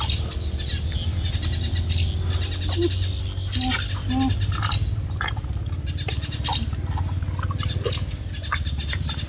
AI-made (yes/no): no